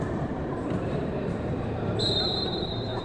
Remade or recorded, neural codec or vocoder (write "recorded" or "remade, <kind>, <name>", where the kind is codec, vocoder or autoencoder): remade, vocoder, BigVGAN v2